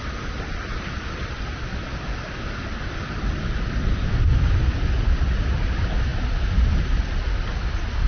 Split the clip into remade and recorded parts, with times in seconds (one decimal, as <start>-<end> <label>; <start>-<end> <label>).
0.0-8.1 recorded